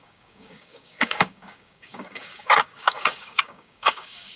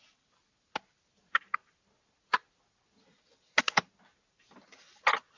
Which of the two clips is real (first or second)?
second